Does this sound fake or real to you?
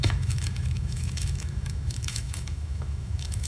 fake